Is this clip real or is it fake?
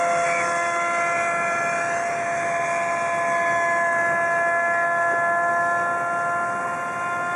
real